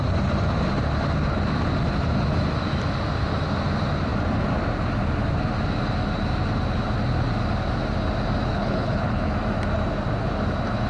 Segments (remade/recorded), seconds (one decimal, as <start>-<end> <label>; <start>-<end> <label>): 0.0-8.5 recorded; 8.5-9.3 remade; 9.3-10.9 recorded